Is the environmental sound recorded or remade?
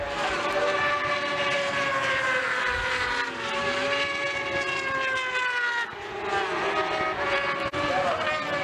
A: recorded